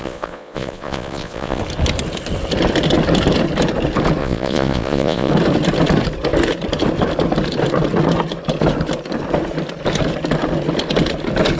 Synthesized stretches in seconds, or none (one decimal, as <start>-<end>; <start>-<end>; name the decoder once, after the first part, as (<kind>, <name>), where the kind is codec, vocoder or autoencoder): 0.0-1.6 (vocoder, Vocos); 4.2-5.3

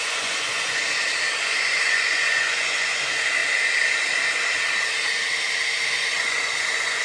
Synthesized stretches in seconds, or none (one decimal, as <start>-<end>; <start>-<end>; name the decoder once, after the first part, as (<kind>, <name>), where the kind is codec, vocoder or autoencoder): 0.0-0.8 (vocoder, Vocos); 1.4-3.4; 5.9-7.0

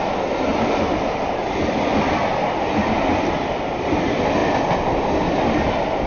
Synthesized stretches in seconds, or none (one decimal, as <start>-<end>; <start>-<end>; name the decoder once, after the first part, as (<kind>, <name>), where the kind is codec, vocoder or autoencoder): none

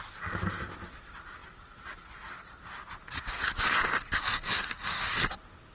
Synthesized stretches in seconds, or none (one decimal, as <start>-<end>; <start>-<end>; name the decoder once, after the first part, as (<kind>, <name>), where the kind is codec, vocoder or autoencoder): none

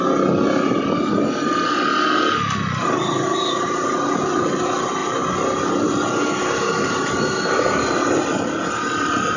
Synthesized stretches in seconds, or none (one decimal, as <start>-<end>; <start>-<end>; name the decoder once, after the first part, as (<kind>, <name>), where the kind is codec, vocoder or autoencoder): none

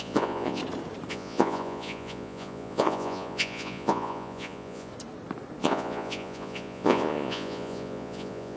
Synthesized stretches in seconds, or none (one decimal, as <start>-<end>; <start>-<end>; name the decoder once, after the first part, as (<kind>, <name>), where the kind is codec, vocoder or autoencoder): 0.0-0.6 (vocoder, Vocos); 1.1-4.9; 5.6-8.6

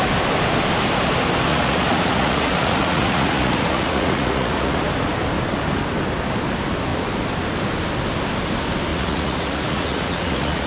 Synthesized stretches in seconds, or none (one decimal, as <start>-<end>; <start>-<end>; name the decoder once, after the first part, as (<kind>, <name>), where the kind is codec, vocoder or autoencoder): 1.5-4.8 (vocoder, Vocos); 8.9-10.7

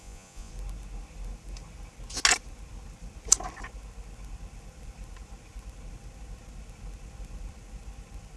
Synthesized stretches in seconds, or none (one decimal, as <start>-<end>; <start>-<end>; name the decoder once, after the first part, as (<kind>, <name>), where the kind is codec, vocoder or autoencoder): 0.0-0.5 (vocoder, Vocos)